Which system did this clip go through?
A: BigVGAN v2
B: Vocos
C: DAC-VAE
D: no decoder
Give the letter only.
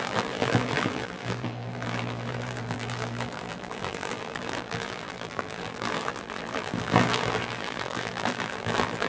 A